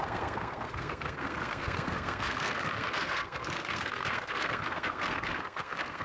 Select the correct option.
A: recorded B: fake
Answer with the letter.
B